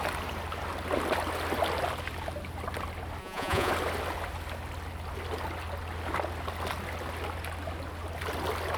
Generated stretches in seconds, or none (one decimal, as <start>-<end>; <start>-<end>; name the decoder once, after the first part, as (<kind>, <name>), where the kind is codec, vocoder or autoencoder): 3.2-3.7 (vocoder, Vocos)